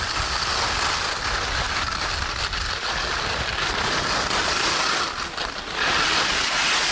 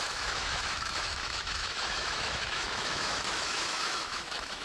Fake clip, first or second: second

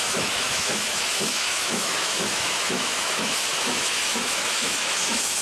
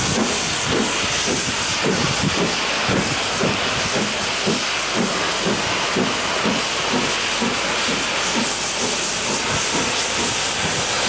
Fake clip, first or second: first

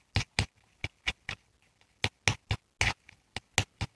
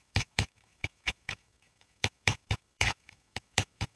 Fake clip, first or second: second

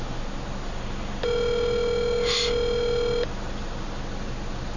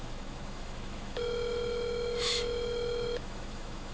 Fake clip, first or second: second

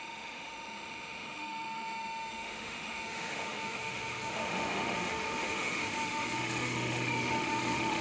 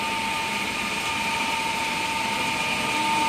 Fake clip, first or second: first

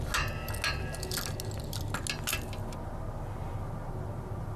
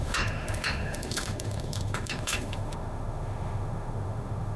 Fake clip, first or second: second